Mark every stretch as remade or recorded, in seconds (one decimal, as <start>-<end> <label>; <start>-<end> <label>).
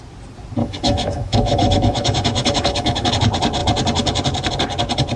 0.0-0.6 recorded; 0.6-3.1 remade; 3.1-5.2 recorded